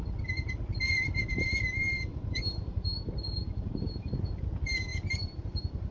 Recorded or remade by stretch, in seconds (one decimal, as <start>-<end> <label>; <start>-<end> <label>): 0.0-2.1 recorded; 2.1-4.1 remade; 4.1-4.9 recorded; 4.9-5.9 remade